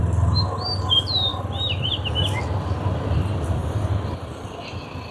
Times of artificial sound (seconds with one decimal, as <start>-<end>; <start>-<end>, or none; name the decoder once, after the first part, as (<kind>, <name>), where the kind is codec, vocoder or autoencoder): none